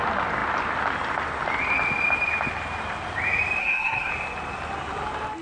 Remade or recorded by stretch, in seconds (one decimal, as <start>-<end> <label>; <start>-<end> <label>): 0.0-3.6 recorded; 3.6-4.1 remade; 4.1-5.4 recorded